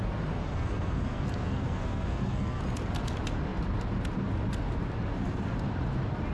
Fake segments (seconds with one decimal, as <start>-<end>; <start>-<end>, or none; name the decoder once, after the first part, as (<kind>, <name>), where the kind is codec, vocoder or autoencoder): 0.4-2.6 (codec, SNAC)